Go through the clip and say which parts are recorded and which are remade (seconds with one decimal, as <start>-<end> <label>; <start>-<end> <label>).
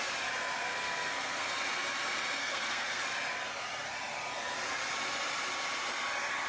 0.0-0.6 recorded; 0.6-1.5 remade; 1.5-2.4 recorded; 2.4-3.0 remade; 3.0-6.5 recorded